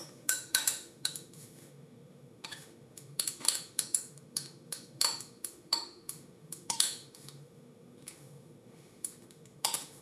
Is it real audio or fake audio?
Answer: fake